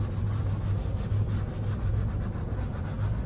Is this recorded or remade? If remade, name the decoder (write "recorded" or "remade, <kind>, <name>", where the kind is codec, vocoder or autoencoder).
recorded